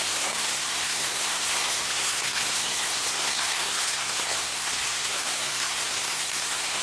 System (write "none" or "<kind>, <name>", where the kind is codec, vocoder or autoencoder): codec, SNAC